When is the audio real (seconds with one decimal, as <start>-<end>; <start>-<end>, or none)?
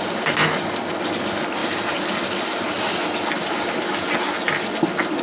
0.0-5.2